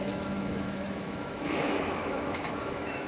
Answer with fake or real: fake